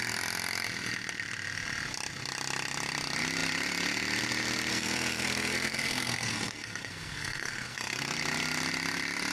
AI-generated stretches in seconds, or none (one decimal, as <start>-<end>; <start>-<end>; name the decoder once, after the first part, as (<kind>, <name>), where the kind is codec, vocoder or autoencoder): 4.7-8.0 (codec, SNAC)